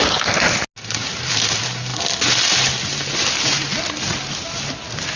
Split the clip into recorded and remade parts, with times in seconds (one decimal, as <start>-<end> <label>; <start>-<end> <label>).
0.0-5.2 recorded